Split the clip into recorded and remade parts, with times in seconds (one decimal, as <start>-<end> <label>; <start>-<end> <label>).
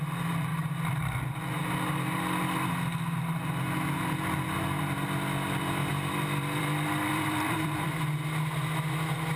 0.0-5.8 recorded; 5.8-8.0 remade; 8.0-9.4 recorded